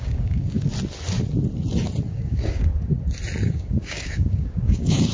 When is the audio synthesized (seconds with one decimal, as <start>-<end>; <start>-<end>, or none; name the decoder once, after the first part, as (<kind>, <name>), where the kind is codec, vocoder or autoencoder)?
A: 0.0-0.7 (codec, DAC); 2.1-2.7; 3.4-5.1